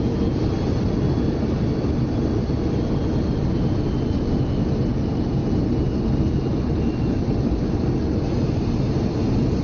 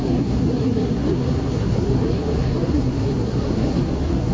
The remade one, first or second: second